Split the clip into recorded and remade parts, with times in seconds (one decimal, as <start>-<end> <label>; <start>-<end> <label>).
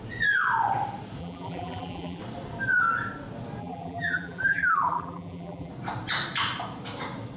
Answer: 0.0-1.2 recorded; 1.2-2.2 remade; 2.2-3.6 recorded; 3.6-5.7 remade; 5.7-7.4 recorded